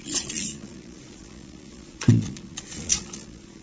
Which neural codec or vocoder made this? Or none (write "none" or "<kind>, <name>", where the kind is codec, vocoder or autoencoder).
vocoder, Vocos